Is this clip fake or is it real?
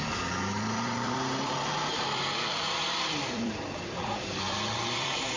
fake